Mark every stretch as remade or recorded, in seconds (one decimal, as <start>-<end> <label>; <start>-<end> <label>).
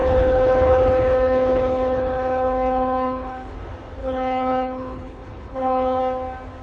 0.0-3.5 remade; 3.5-4.0 recorded; 4.0-6.0 remade; 6.0-6.6 recorded